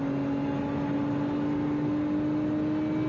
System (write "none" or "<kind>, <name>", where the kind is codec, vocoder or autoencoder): none